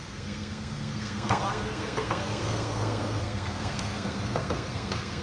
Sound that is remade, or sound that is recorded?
remade